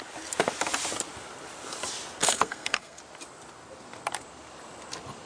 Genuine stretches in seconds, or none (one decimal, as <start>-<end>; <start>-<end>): 0.0-2.2; 3.0-5.3